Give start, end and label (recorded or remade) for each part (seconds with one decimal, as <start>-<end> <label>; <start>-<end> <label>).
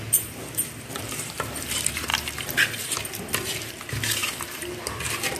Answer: 0.0-5.4 remade